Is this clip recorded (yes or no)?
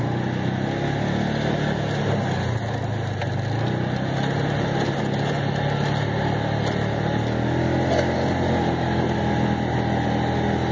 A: yes